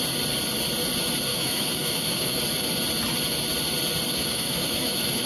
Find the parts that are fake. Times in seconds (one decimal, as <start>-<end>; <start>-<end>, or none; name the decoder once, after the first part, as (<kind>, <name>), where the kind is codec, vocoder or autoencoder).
1.3-2.4 (autoencoder, DAC-VAE); 4.1-5.3